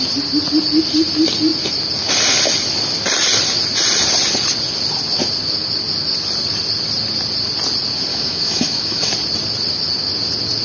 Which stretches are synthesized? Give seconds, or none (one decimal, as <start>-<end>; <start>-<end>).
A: 8.1-9.1